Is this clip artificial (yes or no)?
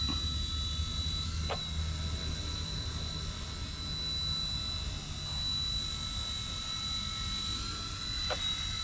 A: no